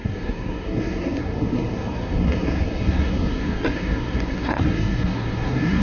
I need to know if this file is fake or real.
fake